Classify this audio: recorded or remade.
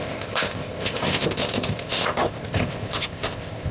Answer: remade